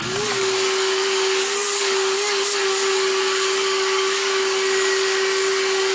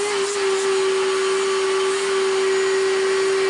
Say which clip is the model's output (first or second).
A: first